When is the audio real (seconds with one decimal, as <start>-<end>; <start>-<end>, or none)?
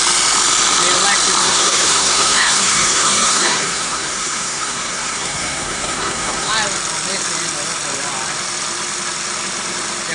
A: 0.0-1.4; 6.5-10.1